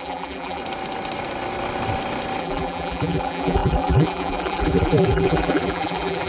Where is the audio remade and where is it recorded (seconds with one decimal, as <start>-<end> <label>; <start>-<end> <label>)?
0.0-0.6 remade; 0.6-2.4 recorded; 2.4-6.3 remade